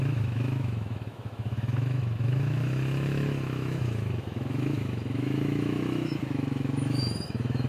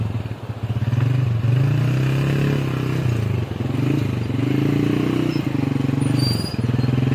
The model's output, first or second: first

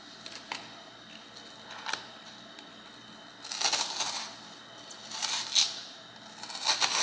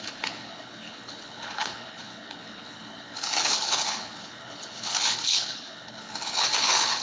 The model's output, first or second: second